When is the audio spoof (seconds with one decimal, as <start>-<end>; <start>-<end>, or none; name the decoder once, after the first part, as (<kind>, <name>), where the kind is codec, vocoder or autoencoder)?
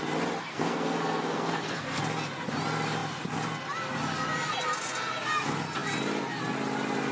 0.5-2.0 (codec, SNAC)